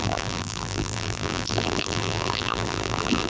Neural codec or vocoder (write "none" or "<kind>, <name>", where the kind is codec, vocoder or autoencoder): vocoder, BigVGAN v2